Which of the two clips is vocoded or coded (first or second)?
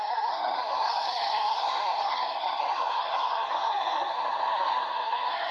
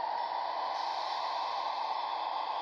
first